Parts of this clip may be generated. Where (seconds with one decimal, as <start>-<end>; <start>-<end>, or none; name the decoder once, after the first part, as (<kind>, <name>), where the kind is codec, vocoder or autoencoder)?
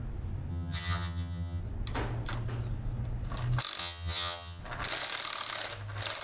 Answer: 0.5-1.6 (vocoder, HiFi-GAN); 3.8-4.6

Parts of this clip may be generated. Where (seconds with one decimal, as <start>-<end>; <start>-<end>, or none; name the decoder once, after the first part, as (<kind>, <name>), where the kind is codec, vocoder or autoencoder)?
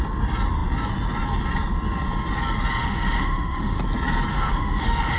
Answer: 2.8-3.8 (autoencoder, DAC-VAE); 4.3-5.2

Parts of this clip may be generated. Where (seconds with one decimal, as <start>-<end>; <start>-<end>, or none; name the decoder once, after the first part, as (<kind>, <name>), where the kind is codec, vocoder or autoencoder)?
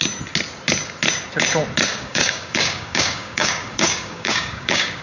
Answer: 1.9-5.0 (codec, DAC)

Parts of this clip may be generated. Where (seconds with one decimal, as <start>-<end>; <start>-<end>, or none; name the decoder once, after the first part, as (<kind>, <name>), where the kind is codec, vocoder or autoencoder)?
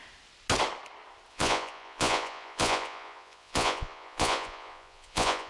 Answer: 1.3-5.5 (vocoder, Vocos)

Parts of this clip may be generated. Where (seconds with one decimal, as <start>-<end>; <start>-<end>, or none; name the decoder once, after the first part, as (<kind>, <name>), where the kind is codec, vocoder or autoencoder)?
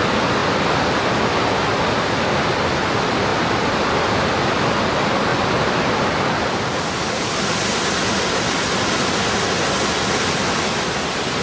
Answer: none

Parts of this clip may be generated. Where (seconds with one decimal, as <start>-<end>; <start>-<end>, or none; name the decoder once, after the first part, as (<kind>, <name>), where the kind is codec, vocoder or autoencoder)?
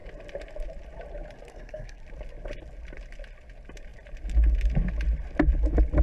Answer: 1.5-2.0 (codec, SNAC)